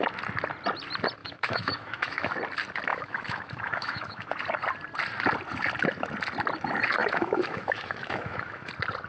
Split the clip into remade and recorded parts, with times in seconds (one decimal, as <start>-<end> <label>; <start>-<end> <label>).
0.0-1.2 recorded; 1.2-2.3 remade; 2.3-2.9 recorded; 2.9-4.3 remade; 4.3-7.0 recorded; 7.0-8.7 remade; 8.7-9.1 recorded